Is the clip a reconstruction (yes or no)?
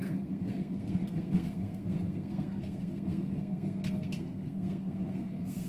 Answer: yes